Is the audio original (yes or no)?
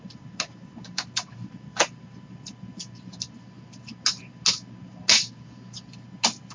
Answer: yes